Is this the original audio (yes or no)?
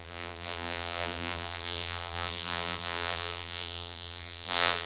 no